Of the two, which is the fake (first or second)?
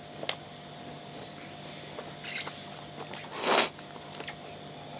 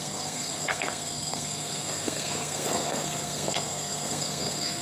second